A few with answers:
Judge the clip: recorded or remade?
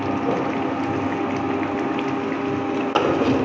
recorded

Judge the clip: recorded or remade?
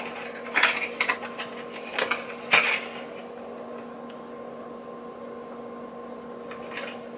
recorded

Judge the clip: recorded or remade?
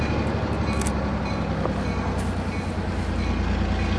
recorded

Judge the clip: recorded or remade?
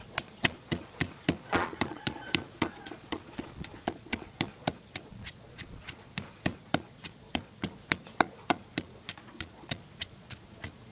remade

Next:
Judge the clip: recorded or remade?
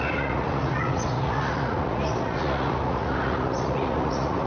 remade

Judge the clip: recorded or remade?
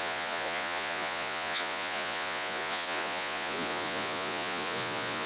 remade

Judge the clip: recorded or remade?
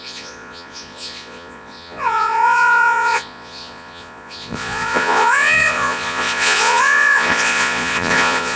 remade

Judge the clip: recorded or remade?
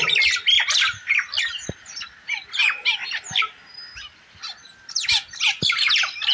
recorded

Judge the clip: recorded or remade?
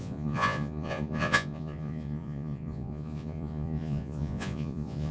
remade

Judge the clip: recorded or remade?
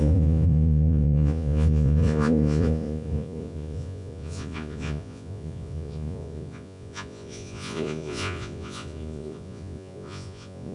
remade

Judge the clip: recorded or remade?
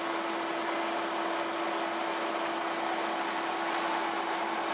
recorded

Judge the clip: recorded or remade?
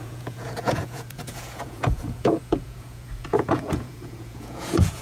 remade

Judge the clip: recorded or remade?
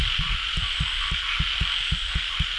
recorded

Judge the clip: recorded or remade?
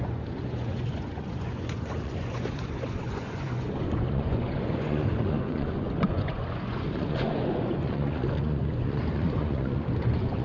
remade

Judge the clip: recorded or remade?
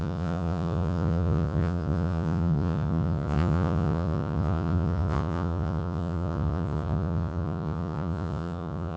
remade